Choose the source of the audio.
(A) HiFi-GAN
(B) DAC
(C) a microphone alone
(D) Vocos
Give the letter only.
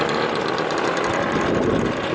C